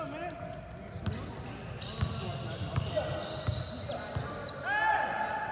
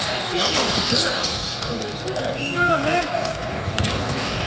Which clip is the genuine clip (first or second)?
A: first